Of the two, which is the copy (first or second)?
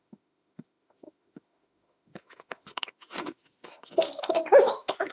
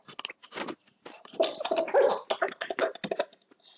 first